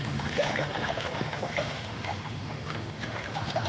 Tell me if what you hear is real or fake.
fake